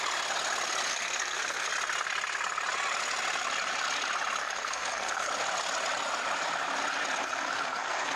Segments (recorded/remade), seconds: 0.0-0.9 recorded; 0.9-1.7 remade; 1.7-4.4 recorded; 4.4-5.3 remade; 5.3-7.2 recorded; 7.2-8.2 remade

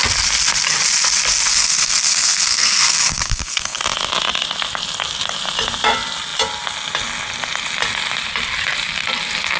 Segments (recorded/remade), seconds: 0.0-1.5 recorded; 1.5-3.8 remade; 3.8-9.6 recorded

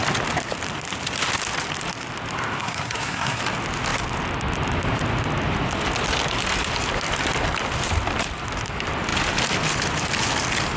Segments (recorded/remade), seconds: 0.0-2.6 recorded; 2.6-3.4 remade; 3.4-10.8 recorded

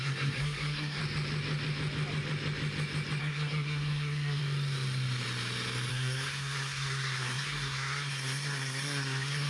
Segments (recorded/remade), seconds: 0.0-1.0 remade; 1.0-3.2 recorded; 3.2-4.4 remade; 4.4-5.9 recorded; 5.9-9.5 remade

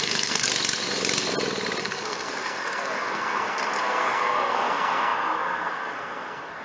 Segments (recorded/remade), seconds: 0.0-0.5 remade; 0.5-1.8 recorded; 1.8-6.6 remade

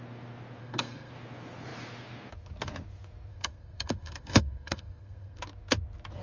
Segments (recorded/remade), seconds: 0.0-0.6 recorded; 0.6-1.1 remade; 1.1-3.3 recorded; 3.3-5.4 remade; 5.4-6.2 recorded

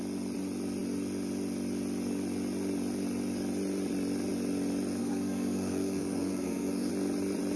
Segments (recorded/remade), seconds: 0.0-5.0 recorded; 5.0-6.9 remade; 6.9-7.6 recorded

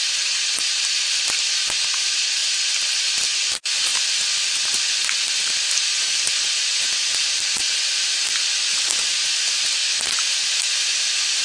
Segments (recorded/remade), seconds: 0.0-11.4 recorded